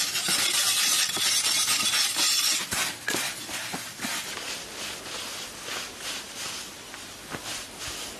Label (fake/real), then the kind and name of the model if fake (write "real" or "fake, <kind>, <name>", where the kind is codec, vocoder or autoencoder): real